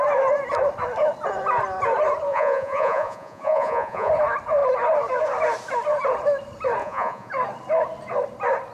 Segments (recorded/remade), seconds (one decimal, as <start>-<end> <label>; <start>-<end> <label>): 0.0-2.3 recorded; 2.3-4.1 remade; 4.1-6.8 recorded; 6.8-7.3 remade; 7.3-8.7 recorded